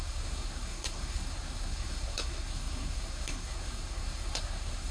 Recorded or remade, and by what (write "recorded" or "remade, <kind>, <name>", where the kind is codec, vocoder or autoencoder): remade, codec, SNAC